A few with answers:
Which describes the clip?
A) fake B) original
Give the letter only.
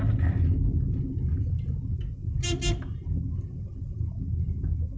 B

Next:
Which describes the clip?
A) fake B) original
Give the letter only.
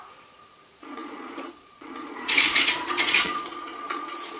A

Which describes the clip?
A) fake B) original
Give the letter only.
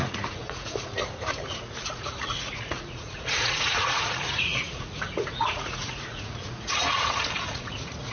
A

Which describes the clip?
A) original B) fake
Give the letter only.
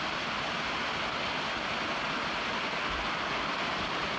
A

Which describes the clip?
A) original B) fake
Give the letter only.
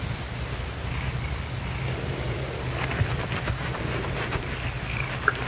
A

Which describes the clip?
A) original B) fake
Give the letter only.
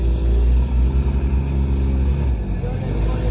A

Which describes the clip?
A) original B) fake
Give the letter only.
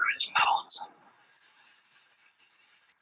B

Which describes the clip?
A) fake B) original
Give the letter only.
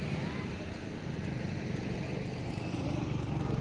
B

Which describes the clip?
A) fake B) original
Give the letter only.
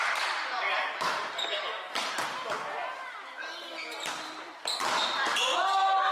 B